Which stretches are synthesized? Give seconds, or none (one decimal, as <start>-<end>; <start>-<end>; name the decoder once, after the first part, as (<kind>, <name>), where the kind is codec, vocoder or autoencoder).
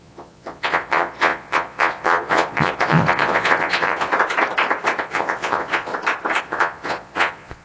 0.0-4.1 (vocoder, Vocos); 5.0-5.9; 6.4-7.6